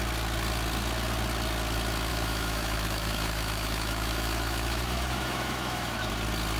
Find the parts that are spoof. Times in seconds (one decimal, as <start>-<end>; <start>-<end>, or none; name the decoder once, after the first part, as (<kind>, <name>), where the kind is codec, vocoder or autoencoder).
2.1-6.1 (autoencoder, DAC-VAE)